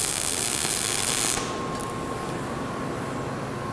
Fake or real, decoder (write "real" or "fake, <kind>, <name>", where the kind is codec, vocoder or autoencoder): real